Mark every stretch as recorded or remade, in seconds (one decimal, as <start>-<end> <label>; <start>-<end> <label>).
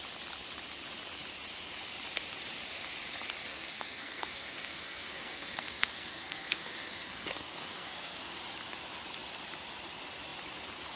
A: 0.0-3.5 recorded; 3.5-8.4 remade; 8.4-11.0 recorded